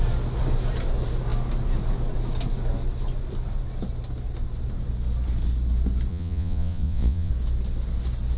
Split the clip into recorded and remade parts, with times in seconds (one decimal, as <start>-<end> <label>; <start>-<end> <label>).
0.0-6.1 recorded; 6.1-7.3 remade; 7.3-8.4 recorded